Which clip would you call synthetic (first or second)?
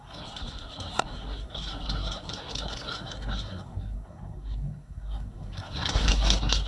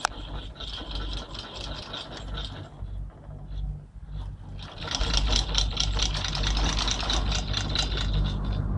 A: first